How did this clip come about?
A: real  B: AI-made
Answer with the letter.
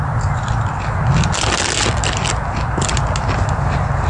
A